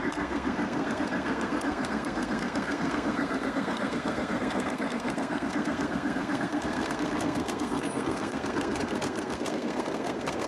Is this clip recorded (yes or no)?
no